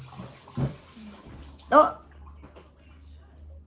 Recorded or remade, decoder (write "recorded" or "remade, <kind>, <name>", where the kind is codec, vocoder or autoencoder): recorded